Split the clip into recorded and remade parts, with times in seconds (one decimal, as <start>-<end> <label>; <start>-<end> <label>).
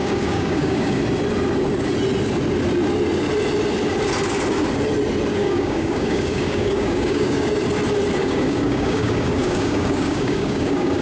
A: 0.0-1.0 remade; 1.0-5.3 recorded; 5.3-7.5 remade; 7.5-8.2 recorded; 8.2-11.0 remade